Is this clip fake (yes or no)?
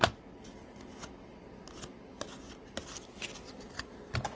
no